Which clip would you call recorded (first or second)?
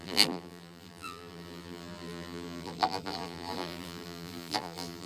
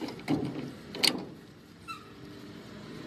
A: second